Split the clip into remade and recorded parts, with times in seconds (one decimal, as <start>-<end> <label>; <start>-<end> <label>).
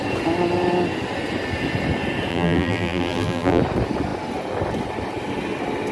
0.0-2.3 recorded; 2.3-3.6 remade; 3.6-5.9 recorded